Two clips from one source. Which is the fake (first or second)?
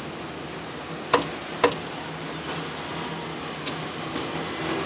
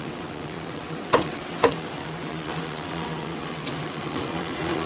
second